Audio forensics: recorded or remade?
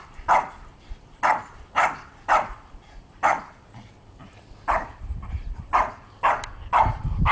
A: recorded